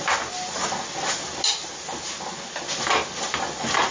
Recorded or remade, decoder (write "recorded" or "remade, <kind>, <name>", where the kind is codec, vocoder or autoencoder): recorded